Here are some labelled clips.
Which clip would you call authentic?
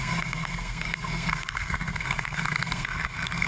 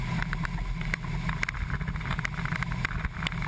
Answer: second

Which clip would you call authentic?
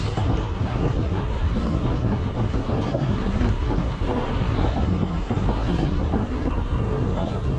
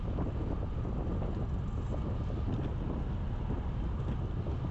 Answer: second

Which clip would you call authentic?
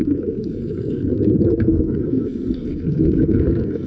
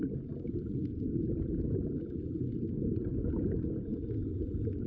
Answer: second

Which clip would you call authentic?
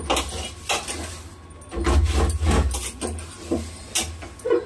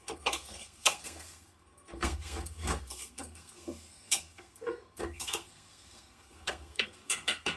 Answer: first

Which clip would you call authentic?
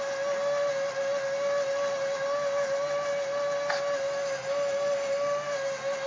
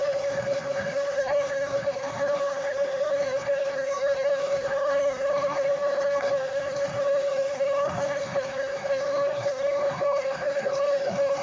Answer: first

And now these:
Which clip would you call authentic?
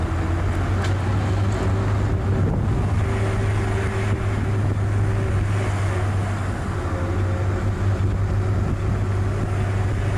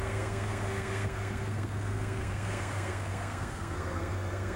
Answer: first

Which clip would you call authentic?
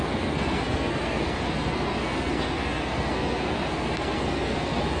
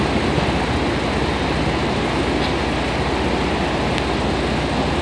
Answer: second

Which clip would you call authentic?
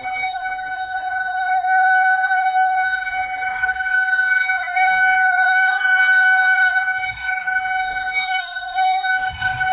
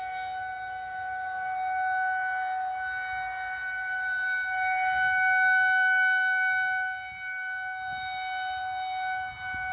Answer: second